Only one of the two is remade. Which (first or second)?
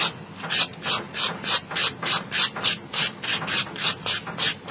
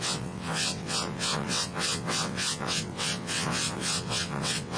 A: second